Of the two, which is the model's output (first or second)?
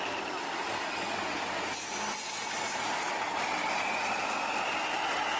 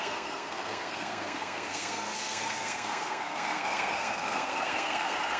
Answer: second